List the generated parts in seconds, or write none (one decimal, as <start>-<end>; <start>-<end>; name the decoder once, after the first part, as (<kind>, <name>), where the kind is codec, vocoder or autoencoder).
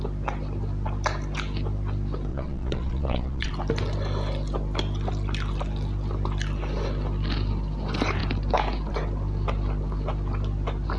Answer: 2.3-3.5 (vocoder, Vocos)